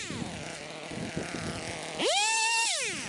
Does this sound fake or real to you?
real